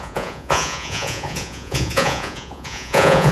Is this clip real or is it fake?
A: fake